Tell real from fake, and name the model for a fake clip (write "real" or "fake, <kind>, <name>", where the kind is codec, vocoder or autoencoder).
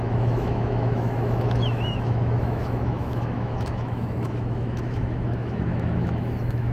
fake, autoencoder, DAC-VAE